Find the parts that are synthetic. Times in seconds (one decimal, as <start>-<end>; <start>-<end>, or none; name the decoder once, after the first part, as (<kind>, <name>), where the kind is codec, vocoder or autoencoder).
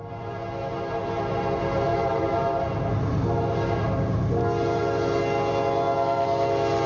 1.9-2.6 (vocoder, BigVGAN v2)